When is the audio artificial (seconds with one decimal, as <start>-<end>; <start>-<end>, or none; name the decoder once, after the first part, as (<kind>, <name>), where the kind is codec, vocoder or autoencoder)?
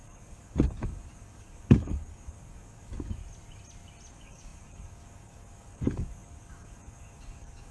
0.0-3.2 (codec, DAC); 4.1-7.7